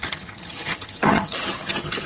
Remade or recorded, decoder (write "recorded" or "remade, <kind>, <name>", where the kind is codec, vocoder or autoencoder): remade, vocoder, HiFi-GAN